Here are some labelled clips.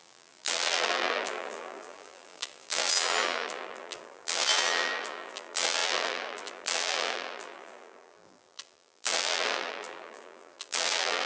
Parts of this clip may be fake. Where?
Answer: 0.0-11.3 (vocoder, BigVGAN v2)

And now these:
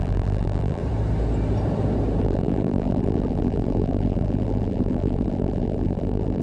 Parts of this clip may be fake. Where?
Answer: 0.0-0.8 (vocoder, BigVGAN v2); 2.2-6.4

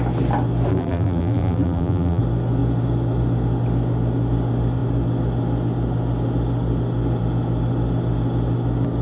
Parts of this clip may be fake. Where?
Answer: 0.7-2.2 (vocoder, BigVGAN v2)

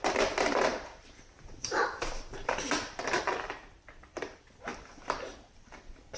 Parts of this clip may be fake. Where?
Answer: 0.7-4.2 (vocoder, BigVGAN v2); 4.7-5.7

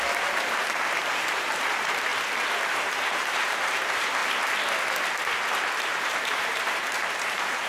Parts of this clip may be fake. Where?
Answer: 0.0-2.1 (vocoder, BigVGAN v2); 2.7-4.2; 5.8-7.7